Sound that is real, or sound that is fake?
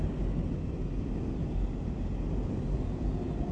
real